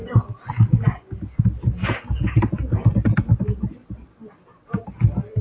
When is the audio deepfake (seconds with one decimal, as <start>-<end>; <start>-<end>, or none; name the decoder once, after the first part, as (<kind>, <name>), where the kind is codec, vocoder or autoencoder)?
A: none